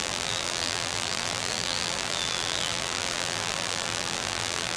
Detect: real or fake fake